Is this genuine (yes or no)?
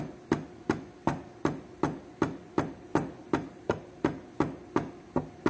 yes